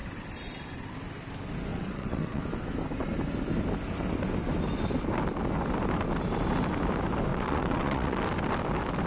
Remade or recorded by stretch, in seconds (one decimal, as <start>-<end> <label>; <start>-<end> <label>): 0.0-1.7 recorded; 1.7-2.4 remade; 2.4-7.3 recorded; 7.3-8.2 remade; 8.2-9.1 recorded

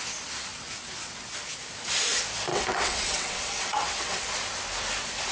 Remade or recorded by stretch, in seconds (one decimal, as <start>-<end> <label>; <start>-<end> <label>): 0.0-2.5 recorded; 2.5-4.3 remade; 4.3-5.3 recorded

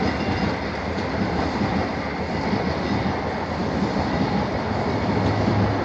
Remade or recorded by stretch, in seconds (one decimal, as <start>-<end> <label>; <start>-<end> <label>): 0.0-5.8 recorded

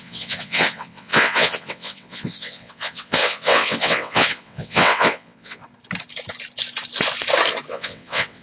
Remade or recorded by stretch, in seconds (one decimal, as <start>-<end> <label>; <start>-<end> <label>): 0.0-5.6 remade; 5.6-7.7 recorded; 7.7-8.4 remade

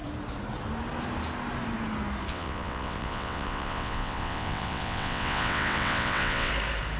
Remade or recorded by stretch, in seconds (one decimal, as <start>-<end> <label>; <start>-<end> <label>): 0.0-2.3 recorded; 2.3-6.5 remade; 6.5-7.0 recorded

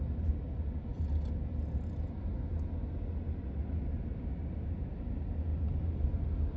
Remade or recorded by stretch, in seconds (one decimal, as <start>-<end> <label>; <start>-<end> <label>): 0.0-6.6 recorded

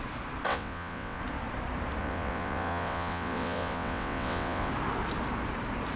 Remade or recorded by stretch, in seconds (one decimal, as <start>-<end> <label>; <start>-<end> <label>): 0.0-0.5 recorded; 0.5-1.2 remade; 1.2-2.0 recorded; 2.0-4.7 remade; 4.7-6.0 recorded